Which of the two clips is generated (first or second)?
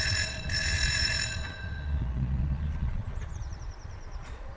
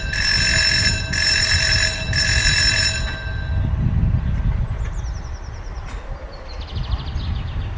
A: first